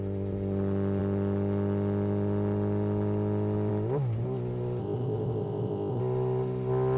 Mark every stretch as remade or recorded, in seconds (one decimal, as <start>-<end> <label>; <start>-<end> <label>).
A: 0.0-4.8 recorded; 4.8-6.0 remade; 6.0-7.0 recorded